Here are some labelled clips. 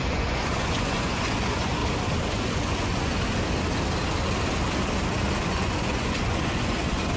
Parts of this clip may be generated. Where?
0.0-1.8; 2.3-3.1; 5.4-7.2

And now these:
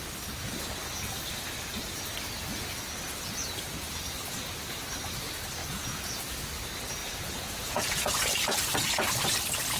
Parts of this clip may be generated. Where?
5.6-6.2; 7.0-8.1

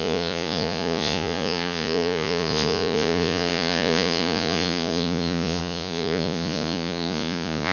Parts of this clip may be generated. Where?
0.0-7.7

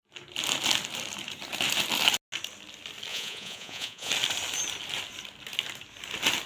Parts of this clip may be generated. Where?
3.1-4.1

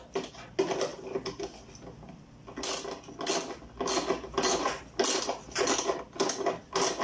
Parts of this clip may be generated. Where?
none

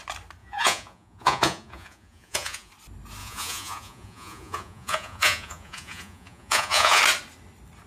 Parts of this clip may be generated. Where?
0.4-2.7; 3.2-7.0

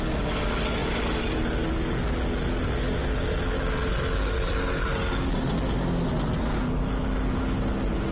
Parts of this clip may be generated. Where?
none

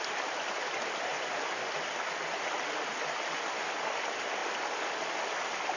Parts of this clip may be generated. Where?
1.1-1.7